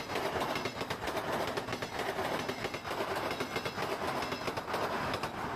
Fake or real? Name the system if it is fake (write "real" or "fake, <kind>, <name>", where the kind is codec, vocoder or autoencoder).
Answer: real